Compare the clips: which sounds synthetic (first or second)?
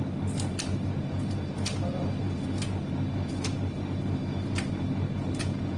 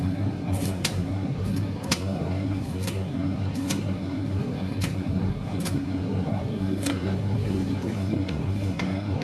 second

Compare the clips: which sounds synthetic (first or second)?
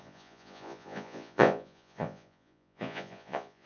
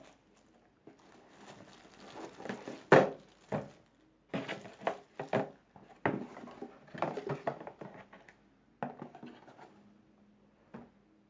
first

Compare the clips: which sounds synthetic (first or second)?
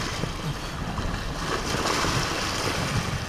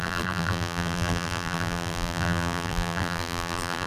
second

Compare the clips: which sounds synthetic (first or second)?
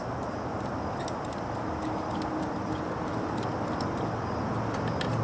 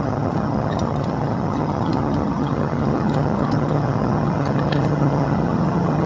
second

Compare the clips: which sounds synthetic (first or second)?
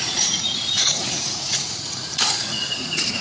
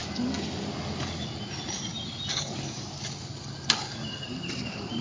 first